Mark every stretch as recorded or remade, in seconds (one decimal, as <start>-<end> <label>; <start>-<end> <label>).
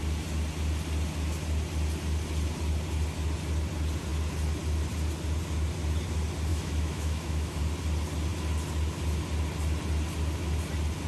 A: 0.0-6.5 recorded; 6.5-7.6 remade; 7.6-11.1 recorded